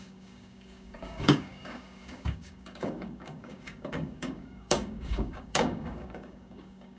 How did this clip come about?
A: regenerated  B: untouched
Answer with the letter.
A